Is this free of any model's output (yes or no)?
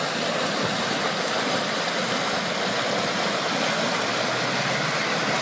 yes